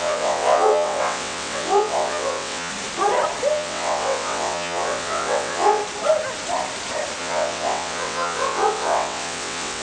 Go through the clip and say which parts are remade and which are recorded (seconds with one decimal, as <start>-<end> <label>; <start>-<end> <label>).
0.0-2.7 remade; 2.7-3.5 recorded; 3.5-5.8 remade; 5.8-7.2 recorded; 7.2-9.8 remade